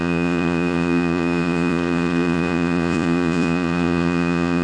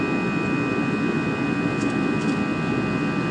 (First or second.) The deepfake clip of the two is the first